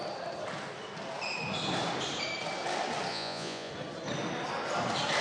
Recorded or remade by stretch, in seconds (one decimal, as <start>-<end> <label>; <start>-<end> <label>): 0.0-3.1 recorded; 3.1-3.7 remade; 3.7-5.2 recorded